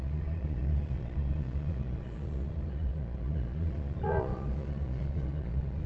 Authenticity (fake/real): fake